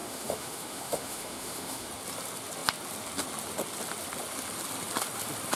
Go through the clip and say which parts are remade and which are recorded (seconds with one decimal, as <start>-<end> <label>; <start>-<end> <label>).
0.0-1.9 remade; 1.9-5.6 recorded